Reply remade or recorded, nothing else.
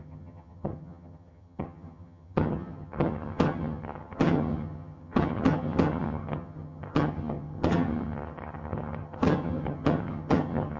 remade